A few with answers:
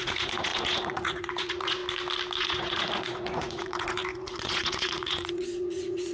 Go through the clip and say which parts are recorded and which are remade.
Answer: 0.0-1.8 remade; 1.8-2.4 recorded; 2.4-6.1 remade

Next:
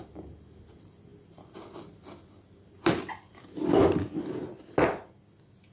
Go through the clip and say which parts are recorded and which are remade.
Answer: 0.0-5.7 recorded

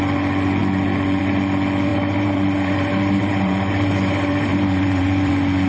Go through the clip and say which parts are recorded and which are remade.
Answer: 0.0-1.9 recorded; 1.9-5.3 remade; 5.3-5.7 recorded

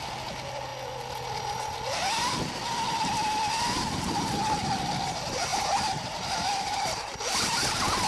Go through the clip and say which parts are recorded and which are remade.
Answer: 0.0-5.5 recorded; 5.5-7.1 remade; 7.1-8.1 recorded

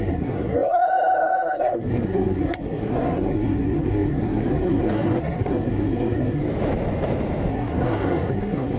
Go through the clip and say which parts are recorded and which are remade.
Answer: 0.0-6.4 remade; 6.4-7.5 recorded; 7.5-8.8 remade

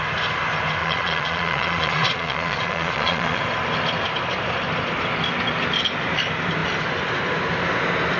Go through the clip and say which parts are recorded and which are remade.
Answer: 0.0-0.8 recorded; 0.8-3.4 remade; 3.4-8.2 recorded